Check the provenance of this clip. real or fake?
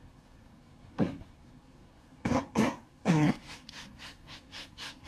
fake